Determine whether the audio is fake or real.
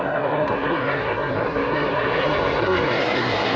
fake